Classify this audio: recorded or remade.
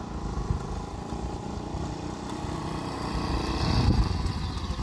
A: recorded